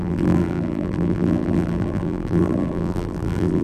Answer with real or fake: fake